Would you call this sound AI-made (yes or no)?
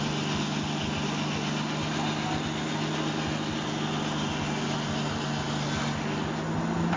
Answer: no